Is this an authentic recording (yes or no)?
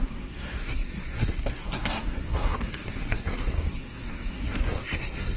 no